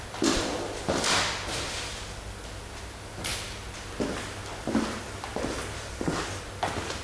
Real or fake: real